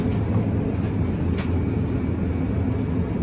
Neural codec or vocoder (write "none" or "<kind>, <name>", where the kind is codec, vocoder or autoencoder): none